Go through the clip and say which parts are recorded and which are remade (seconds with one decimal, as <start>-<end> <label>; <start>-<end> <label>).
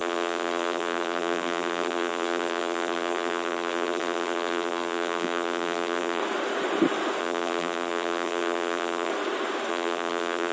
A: 0.0-6.2 remade; 6.2-7.2 recorded; 7.2-9.1 remade; 9.1-9.7 recorded; 9.7-10.5 remade